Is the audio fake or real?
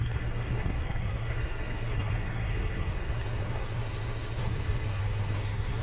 fake